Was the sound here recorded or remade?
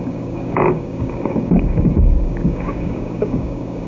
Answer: remade